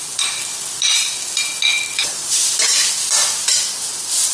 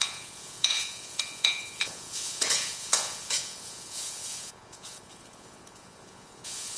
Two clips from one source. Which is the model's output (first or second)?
second